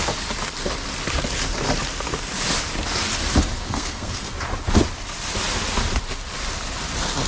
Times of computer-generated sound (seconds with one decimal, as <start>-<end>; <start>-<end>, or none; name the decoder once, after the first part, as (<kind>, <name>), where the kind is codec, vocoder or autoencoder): 3.6-4.3 (codec, SNAC)